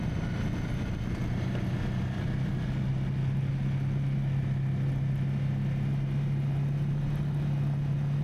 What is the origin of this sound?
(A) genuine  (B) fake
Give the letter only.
A